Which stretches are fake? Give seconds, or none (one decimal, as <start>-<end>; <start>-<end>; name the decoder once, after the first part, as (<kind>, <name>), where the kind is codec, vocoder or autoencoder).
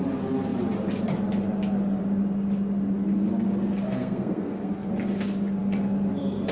4.0-4.7 (codec, SNAC)